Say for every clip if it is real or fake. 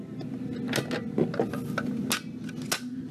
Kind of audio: real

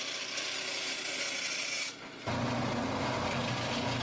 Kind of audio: real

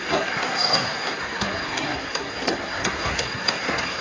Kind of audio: fake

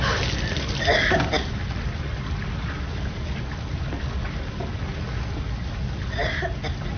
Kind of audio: real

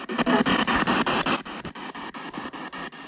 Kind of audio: real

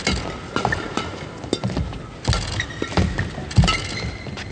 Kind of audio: real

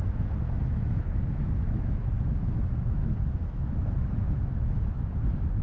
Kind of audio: fake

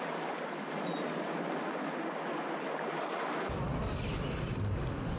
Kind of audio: real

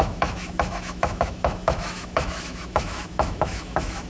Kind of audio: fake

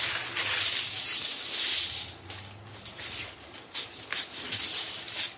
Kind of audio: real